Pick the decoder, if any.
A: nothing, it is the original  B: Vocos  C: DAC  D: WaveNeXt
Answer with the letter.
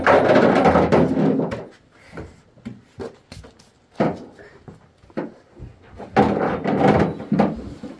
A